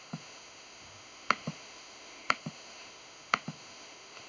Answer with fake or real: fake